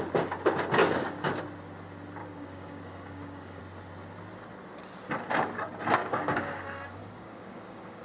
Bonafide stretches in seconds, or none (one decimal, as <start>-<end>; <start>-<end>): 0.0-0.8; 1.3-2.2; 3.6-6.0; 6.6-7.0